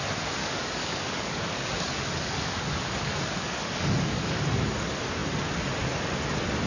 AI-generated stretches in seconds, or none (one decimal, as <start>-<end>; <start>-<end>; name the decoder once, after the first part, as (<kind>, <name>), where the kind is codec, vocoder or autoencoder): 0.4-4.4 (codec, DAC)